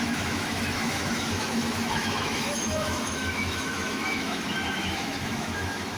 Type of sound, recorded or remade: remade